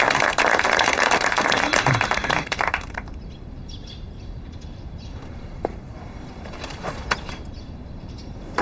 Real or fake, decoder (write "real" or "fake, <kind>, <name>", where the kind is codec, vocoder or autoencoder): fake, vocoder, BigVGAN v2